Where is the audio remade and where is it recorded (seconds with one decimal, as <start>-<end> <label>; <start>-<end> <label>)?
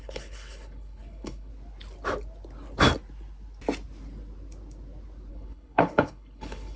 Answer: 0.0-1.5 remade; 1.5-5.3 recorded; 5.3-6.8 remade